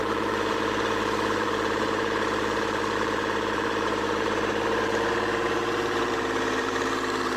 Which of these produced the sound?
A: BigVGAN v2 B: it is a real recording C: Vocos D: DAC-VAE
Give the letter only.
A